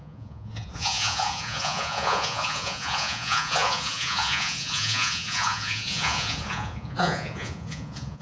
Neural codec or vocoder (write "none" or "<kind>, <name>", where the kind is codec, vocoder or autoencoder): vocoder, Vocos